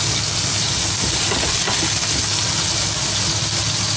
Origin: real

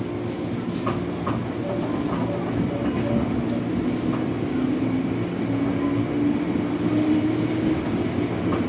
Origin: real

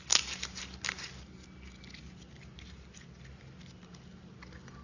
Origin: real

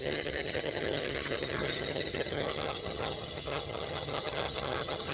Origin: fake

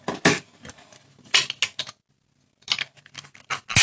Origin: real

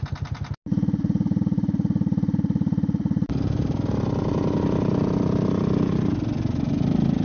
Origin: real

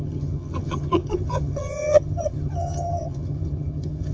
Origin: fake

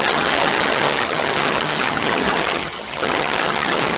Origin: fake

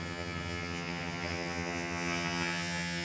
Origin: fake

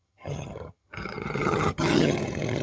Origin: fake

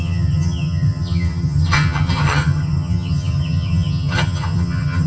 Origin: fake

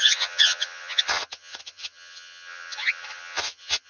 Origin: fake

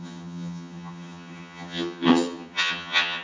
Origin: fake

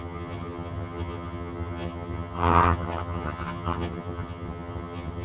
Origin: fake